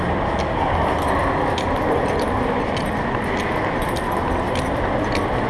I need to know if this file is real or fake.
real